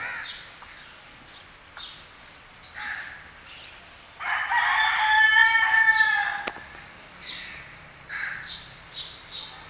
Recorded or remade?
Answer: recorded